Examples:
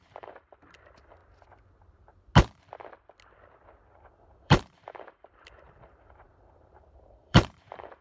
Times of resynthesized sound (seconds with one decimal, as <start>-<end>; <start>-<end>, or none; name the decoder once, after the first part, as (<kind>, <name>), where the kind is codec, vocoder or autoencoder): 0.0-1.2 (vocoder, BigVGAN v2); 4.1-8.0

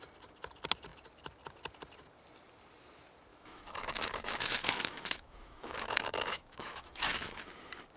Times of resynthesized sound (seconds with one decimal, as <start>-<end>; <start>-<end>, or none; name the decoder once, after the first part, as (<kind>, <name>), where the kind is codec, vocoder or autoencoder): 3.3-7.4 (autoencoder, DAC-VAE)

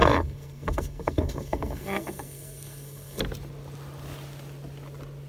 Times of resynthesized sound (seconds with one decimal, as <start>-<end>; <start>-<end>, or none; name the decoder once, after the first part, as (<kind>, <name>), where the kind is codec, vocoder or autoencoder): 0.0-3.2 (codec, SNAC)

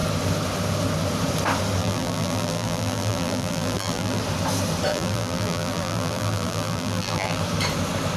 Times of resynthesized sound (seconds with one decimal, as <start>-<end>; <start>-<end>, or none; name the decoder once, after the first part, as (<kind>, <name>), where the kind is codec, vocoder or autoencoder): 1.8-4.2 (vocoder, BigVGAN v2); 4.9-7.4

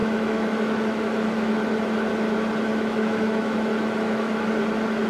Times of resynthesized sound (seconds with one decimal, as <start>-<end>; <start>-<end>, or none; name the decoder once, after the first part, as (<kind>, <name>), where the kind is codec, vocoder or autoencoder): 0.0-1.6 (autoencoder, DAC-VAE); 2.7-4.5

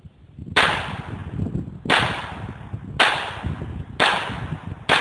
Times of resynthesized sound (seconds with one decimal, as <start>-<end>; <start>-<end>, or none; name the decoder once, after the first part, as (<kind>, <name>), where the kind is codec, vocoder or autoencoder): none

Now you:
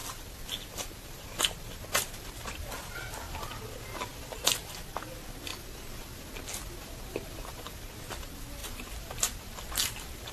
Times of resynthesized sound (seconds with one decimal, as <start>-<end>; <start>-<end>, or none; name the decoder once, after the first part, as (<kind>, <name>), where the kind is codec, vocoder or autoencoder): 5.5-6.2 (vocoder, BigVGAN v2); 8.6-9.1